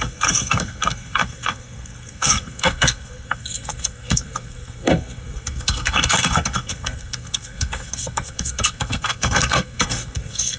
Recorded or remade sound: remade